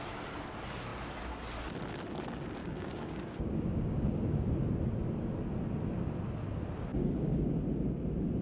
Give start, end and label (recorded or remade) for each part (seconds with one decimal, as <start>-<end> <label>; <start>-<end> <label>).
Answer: 0.0-2.6 recorded; 2.6-4.5 remade; 4.5-6.9 recorded; 6.9-7.5 remade; 7.5-8.4 recorded